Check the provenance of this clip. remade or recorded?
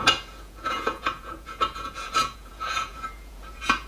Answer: remade